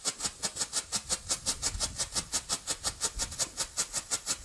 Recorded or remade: recorded